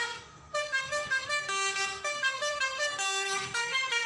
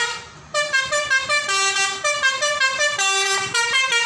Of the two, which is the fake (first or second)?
first